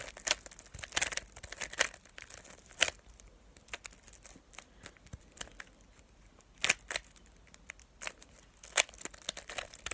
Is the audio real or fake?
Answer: real